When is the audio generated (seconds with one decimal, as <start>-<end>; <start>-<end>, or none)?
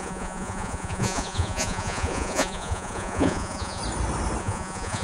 0.0-3.8; 4.4-5.0